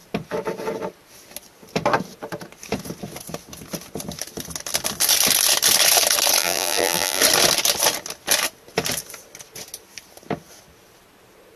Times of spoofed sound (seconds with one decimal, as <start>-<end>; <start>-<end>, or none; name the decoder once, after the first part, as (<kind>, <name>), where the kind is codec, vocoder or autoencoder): 6.4-7.2 (vocoder, BigVGAN v2)